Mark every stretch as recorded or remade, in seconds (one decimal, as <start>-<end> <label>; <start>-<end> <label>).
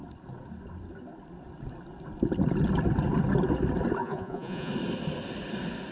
0.0-4.0 recorded; 4.0-4.7 remade; 4.7-5.9 recorded